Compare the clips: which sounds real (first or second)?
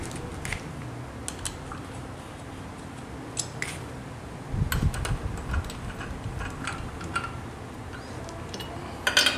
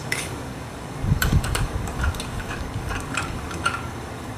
first